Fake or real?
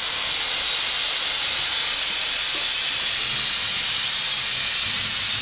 real